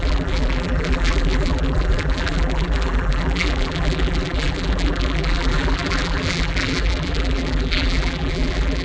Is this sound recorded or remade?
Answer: remade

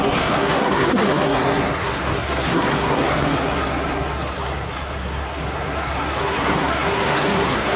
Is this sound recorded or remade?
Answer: remade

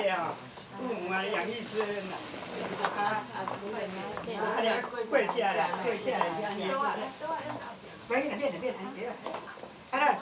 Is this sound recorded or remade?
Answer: recorded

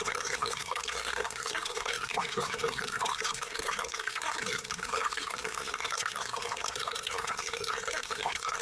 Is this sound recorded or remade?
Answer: remade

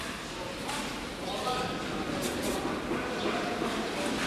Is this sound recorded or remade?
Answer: recorded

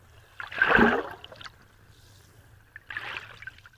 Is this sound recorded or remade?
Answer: recorded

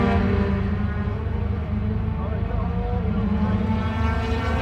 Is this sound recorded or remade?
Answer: recorded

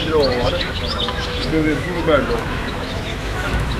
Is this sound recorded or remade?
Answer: remade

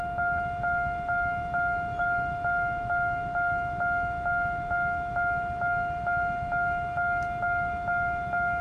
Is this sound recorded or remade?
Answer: recorded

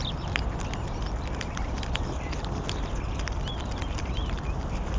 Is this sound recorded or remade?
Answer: recorded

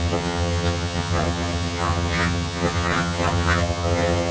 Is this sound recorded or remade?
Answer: remade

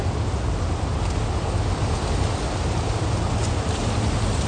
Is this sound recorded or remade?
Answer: recorded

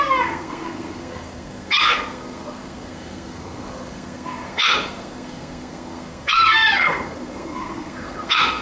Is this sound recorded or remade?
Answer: remade